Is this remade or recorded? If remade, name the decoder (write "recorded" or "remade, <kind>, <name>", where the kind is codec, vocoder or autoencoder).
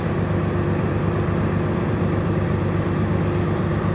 remade, vocoder, BigVGAN v2